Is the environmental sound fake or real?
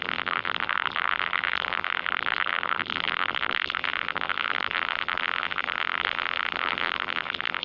fake